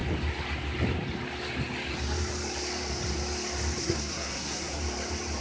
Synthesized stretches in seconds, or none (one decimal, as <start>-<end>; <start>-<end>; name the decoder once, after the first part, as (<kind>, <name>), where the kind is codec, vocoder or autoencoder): 3.8-4.8 (codec, SNAC)